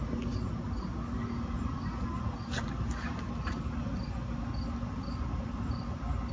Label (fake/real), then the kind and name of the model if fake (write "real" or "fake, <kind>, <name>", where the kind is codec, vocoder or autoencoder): real